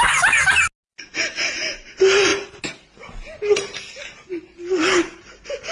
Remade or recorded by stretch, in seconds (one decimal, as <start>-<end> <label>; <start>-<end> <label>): 0.0-5.7 recorded